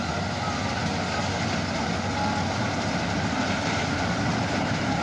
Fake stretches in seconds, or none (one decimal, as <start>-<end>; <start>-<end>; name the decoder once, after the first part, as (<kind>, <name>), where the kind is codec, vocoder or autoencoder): 3.0-5.0 (vocoder, BigVGAN v2)